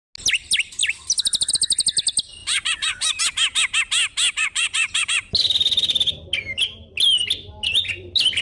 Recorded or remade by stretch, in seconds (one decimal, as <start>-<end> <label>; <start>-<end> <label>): 0.0-2.4 recorded; 2.4-3.2 remade; 3.2-4.4 recorded; 4.4-5.2 remade; 5.2-8.4 recorded